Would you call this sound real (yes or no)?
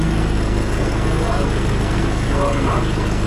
no